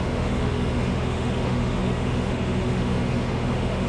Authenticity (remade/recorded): remade